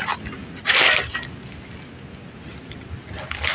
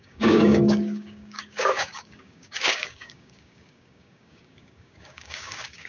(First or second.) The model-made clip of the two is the second